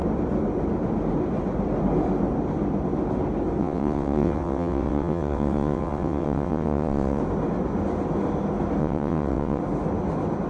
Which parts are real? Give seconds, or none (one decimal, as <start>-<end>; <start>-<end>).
0.0-3.6; 7.2-8.8; 9.6-10.5